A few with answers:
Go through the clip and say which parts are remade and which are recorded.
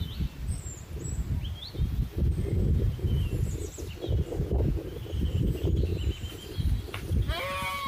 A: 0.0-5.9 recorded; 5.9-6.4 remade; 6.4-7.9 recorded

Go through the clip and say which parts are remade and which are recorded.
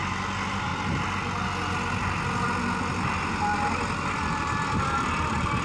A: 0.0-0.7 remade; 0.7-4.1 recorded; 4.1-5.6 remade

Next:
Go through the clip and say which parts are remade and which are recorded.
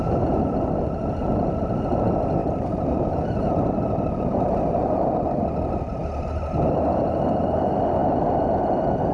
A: 0.0-2.4 recorded; 2.4-5.2 remade; 5.2-9.1 recorded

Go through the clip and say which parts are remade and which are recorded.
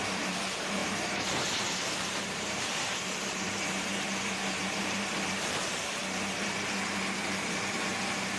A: 0.0-8.4 remade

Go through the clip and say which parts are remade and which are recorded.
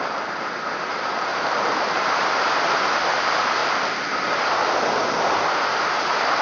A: 0.0-3.6 remade; 3.6-4.1 recorded; 4.1-4.6 remade; 4.6-5.2 recorded; 5.2-6.4 remade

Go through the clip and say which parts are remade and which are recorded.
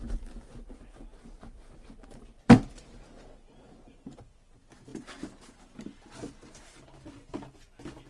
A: 0.0-1.1 recorded; 1.1-3.2 remade; 3.2-8.1 recorded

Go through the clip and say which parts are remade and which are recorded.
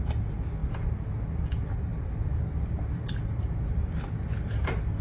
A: 0.0-1.9 recorded; 1.9-5.0 remade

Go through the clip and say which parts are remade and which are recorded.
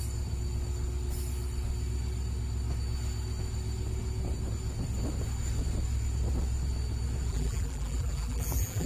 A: 0.0-7.3 recorded; 7.3-8.9 remade